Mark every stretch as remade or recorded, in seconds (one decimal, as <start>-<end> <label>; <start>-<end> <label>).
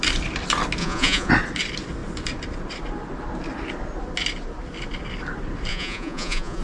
0.0-0.8 recorded; 0.8-1.3 remade; 1.3-5.7 recorded; 5.7-6.6 remade